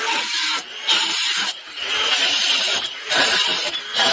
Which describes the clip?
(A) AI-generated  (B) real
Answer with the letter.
A